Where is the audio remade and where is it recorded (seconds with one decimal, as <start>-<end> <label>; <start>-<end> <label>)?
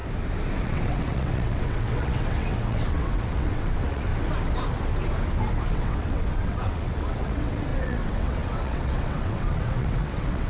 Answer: 0.0-0.6 recorded; 0.6-4.1 remade; 4.1-5.7 recorded; 5.7-10.5 remade